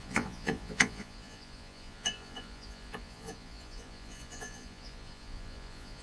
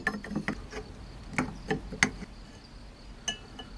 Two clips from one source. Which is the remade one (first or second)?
first